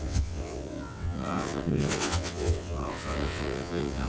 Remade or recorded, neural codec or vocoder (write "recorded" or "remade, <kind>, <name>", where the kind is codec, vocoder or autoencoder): remade, vocoder, WaveNeXt